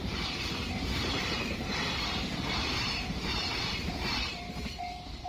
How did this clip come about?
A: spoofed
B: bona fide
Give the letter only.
A